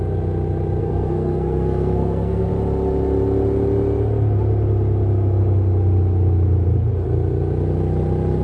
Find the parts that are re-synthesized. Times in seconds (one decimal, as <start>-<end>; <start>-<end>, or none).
0.8-2.5